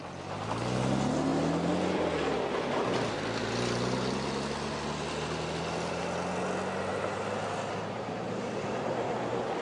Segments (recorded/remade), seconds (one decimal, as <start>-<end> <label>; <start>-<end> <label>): 0.0-6.9 recorded; 6.9-9.2 remade; 9.2-9.6 recorded